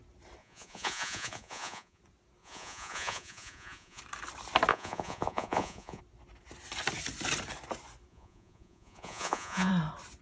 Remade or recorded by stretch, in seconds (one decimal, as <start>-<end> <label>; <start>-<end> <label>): 0.0-0.4 recorded; 0.4-2.0 remade; 2.0-2.4 recorded; 2.4-4.0 remade; 4.0-4.7 recorded; 4.7-6.0 remade; 6.0-8.1 recorded; 8.1-9.7 remade; 9.7-10.2 recorded